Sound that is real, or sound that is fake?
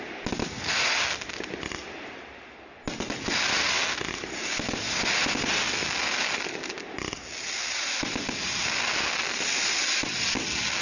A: real